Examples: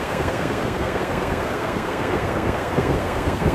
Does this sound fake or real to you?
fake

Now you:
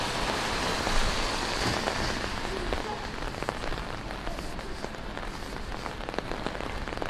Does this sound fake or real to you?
real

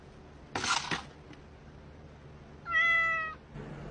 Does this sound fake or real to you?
real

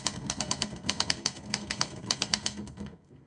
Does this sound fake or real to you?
fake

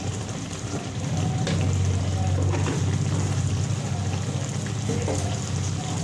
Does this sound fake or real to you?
real